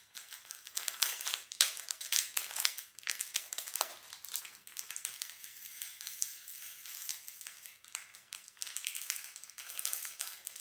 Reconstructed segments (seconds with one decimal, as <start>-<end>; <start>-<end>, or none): 0.0-3.9; 4.4-10.6